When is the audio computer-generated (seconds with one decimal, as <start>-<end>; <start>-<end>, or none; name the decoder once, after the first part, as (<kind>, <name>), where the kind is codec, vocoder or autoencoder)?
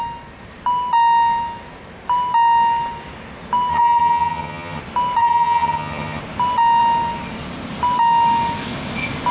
3.7-4.8 (vocoder, HiFi-GAN); 5.2-6.2